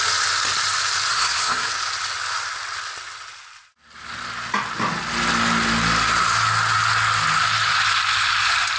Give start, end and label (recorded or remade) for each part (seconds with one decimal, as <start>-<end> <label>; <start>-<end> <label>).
0.0-1.1 recorded; 1.1-1.7 remade; 1.7-8.8 recorded